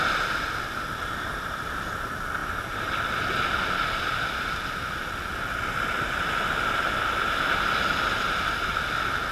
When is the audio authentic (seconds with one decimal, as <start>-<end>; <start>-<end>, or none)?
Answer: 0.0-2.4; 2.9-9.3